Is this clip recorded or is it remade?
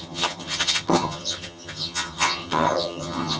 remade